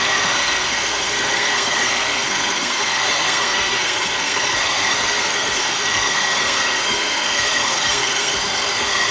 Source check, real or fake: fake